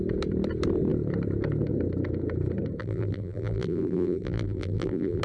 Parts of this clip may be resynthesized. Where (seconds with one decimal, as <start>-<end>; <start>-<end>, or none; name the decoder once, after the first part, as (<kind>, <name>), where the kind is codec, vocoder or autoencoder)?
2.8-5.2 (vocoder, BigVGAN v2)